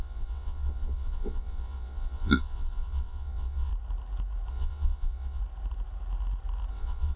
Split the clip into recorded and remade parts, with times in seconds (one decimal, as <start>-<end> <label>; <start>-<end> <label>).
0.0-3.7 remade; 3.7-4.5 recorded; 4.5-5.4 remade; 5.4-6.7 recorded; 6.7-7.2 remade